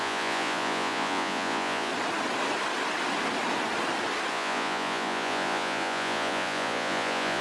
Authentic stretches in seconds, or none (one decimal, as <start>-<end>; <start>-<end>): 1.9-4.3